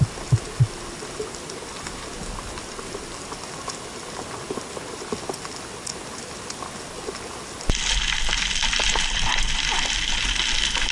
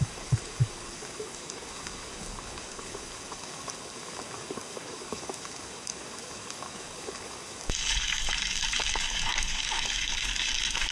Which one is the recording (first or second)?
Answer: first